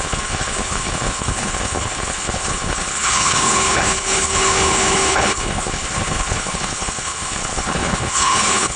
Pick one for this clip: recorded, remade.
remade